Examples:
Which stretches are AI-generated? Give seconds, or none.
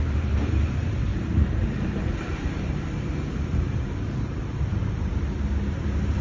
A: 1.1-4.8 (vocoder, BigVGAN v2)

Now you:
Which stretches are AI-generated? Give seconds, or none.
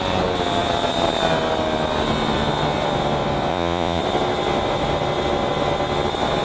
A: 3.5-4.0 (vocoder, Vocos)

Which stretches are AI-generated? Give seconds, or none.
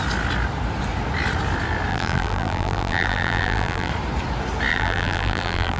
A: 1.9-3.9 (vocoder, BigVGAN v2); 4.7-5.8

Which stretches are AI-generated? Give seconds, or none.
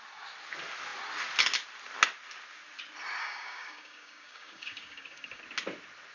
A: 3.2-5.4 (codec, DAC)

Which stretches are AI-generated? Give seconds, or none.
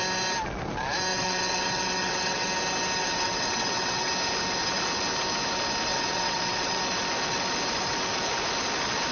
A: 1.1-2.5 (vocoder, WaveNeXt); 3.0-4.1; 5.9-6.8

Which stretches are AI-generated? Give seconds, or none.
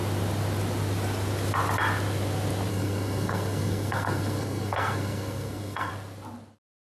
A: 2.7-5.9 (codec, SNAC)